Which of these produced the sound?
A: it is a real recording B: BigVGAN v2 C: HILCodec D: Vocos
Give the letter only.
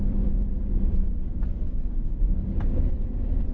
B